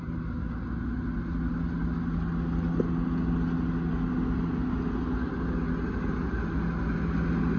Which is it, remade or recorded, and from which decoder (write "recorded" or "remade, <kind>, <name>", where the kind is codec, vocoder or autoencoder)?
recorded